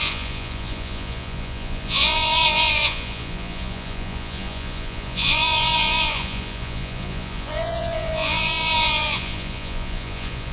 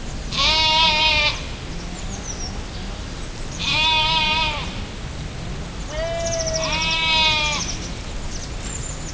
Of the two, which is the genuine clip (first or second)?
second